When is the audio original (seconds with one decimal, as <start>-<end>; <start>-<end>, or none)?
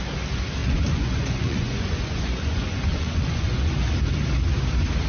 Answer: 0.0-0.6; 3.7-5.1